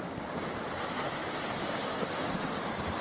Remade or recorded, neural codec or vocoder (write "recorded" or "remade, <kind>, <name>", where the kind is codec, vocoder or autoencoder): recorded